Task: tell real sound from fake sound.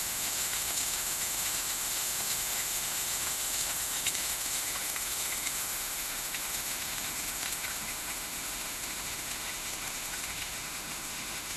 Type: fake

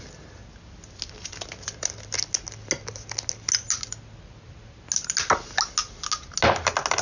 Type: real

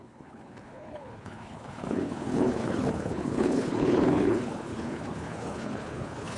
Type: fake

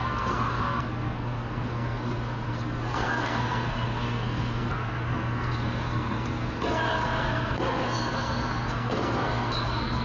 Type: fake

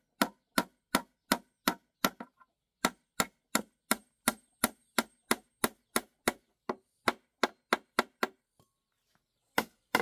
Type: real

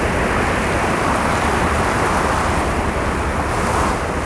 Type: real